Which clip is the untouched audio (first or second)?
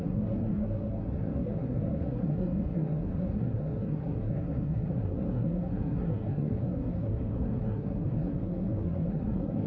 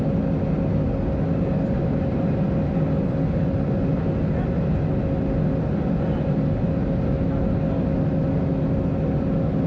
second